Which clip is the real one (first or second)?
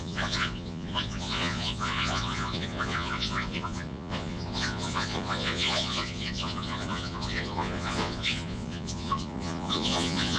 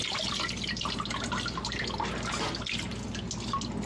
second